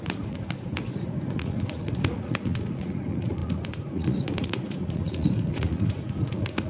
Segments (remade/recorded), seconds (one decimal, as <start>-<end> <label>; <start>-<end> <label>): 0.0-6.7 remade